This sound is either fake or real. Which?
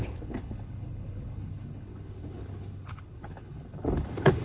fake